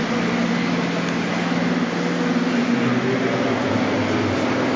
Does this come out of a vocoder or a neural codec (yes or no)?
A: no